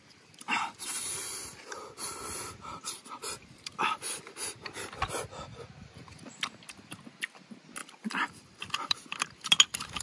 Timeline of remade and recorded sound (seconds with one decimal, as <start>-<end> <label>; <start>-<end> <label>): 0.0-7.8 recorded; 7.8-9.3 remade; 9.3-10.0 recorded